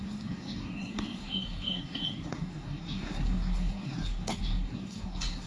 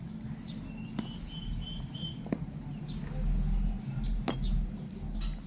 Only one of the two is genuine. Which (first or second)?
second